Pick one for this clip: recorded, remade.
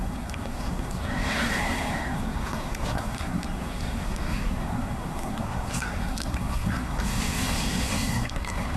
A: remade